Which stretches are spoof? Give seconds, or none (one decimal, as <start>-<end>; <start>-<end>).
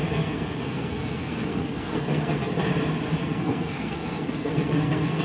0.0-2.5; 3.2-5.2